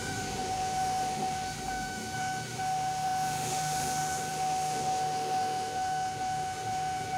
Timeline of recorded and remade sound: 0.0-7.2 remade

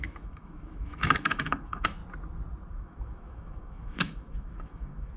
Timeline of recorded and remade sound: 0.0-2.0 remade; 2.0-2.7 recorded; 2.7-5.2 remade

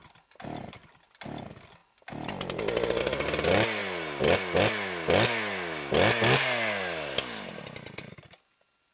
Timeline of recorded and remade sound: 0.0-8.9 recorded

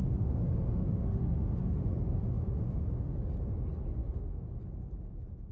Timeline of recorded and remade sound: 0.0-3.3 remade; 3.3-4.0 recorded; 4.0-4.5 remade; 4.5-5.5 recorded

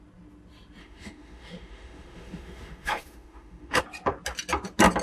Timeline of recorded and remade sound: 0.0-0.8 recorded; 0.8-3.8 remade; 3.8-5.0 recorded

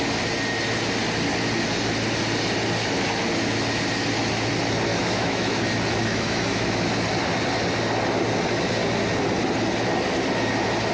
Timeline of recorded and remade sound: 0.0-4.9 recorded; 4.9-5.6 remade; 5.6-6.0 recorded; 6.0-6.8 remade; 6.8-10.9 recorded

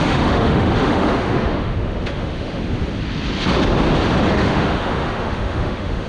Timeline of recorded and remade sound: 0.0-2.6 remade; 2.6-4.3 recorded; 4.3-6.1 remade

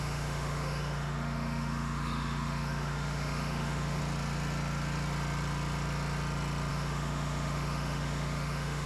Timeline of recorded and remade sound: 0.0-4.0 remade; 4.0-6.7 recorded; 6.7-8.9 remade